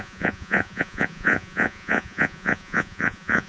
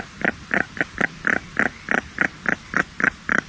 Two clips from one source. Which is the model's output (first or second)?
first